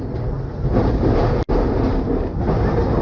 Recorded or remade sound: recorded